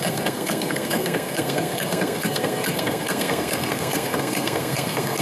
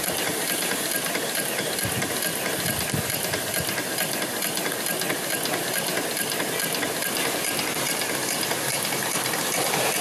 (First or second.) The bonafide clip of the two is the second